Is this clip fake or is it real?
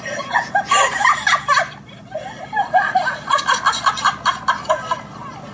real